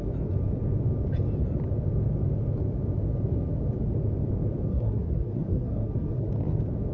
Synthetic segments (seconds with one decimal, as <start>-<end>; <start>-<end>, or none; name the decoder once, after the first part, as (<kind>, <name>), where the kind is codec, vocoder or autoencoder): 4.7-6.3 (codec, SNAC)

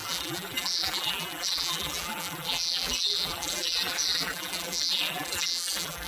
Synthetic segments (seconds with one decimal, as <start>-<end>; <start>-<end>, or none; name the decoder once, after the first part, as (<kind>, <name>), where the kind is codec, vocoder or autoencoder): 0.0-6.1 (vocoder, BigVGAN v2)

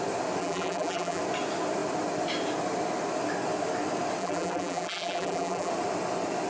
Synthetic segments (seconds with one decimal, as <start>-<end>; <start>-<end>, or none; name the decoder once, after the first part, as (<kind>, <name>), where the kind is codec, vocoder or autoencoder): 0.4-1.2 (vocoder, BigVGAN v2); 4.2-5.7

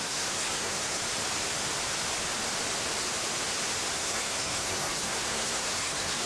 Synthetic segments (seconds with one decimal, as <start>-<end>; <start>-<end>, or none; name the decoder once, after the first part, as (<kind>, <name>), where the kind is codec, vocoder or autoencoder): 0.0-1.0 (codec, SNAC); 4.0-6.3

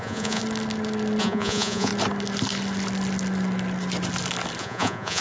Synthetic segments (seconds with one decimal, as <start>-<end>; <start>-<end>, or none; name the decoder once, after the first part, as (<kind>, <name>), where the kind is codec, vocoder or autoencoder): 0.0-0.4 (vocoder, Vocos); 1.2-1.9; 4.6-5.2

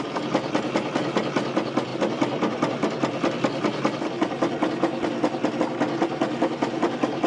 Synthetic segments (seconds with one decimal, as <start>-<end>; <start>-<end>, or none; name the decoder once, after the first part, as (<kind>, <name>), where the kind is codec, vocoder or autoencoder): none

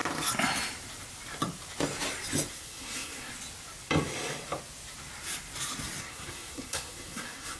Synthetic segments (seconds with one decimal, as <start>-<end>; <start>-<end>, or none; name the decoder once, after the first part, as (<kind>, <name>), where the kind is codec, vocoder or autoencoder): 2.5-3.3 (codec, SNAC); 6.0-7.6

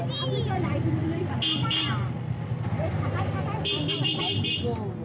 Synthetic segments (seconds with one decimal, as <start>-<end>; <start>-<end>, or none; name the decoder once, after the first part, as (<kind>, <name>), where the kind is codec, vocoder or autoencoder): none